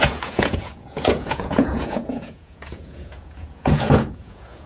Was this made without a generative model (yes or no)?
no